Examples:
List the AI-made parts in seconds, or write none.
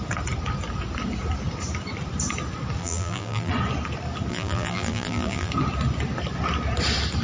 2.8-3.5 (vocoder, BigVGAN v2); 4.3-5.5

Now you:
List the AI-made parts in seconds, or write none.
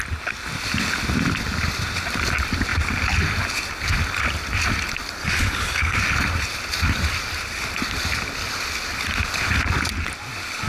5.2-6.0 (codec, DAC)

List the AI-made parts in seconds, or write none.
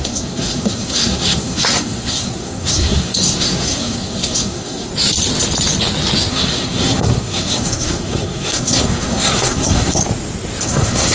0.0-4.9 (codec, SNAC); 6.3-10.0; 10.6-11.1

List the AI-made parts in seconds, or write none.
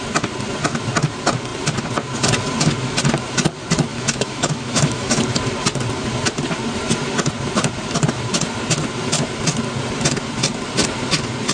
3.9-5.2 (autoencoder, DAC-VAE)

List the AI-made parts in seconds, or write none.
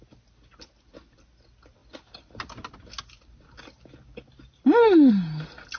none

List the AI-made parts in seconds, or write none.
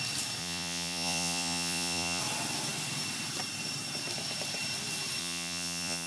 0.4-2.2 (vocoder, Vocos); 5.2-6.1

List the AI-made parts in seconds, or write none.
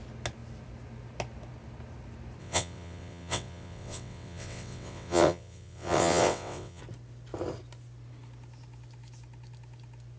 2.4-6.8 (vocoder, WaveNeXt)